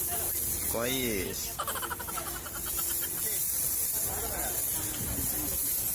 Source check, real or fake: real